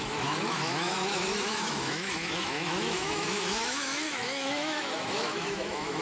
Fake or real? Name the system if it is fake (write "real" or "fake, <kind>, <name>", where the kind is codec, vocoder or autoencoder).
fake, autoencoder, DAC-VAE